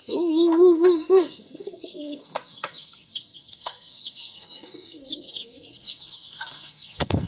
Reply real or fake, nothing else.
fake